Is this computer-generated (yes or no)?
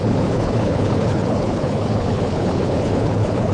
yes